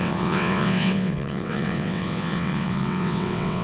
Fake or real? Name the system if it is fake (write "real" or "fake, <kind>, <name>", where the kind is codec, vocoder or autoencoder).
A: fake, vocoder, WaveNeXt